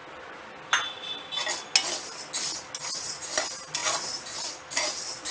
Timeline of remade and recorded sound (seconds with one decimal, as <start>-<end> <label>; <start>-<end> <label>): 0.0-5.3 recorded